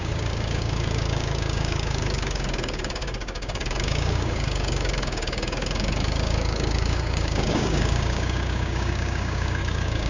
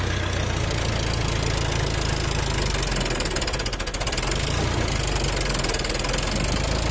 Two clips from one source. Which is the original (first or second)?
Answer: second